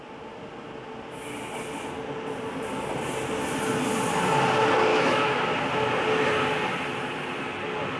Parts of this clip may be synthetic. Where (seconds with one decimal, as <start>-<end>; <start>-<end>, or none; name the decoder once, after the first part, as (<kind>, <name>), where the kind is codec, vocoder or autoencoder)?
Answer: 4.9-5.4 (autoencoder, DAC-VAE)